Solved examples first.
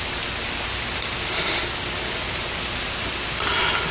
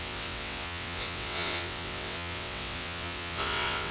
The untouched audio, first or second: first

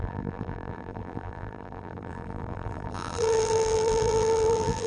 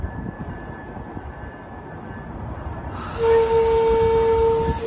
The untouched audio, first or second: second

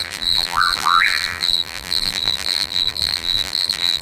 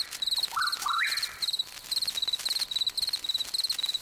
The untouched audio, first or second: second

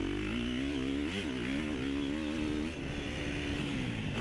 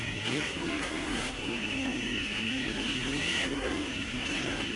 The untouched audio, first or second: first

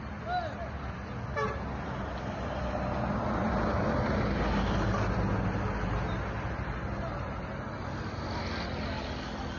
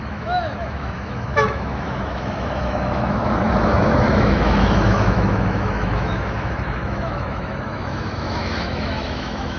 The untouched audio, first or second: first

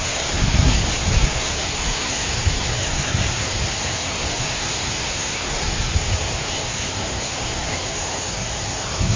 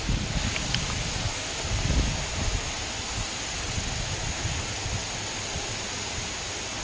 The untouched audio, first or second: second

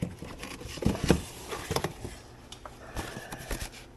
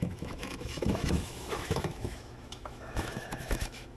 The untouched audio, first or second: first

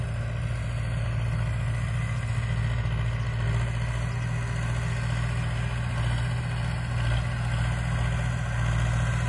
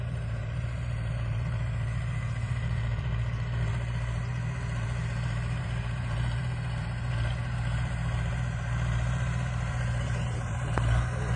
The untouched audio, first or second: first